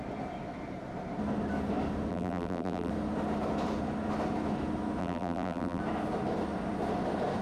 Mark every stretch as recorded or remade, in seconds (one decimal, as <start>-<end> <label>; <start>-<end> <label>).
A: 0.0-2.1 recorded; 2.1-2.9 remade; 2.9-5.0 recorded; 5.0-5.8 remade; 5.8-7.4 recorded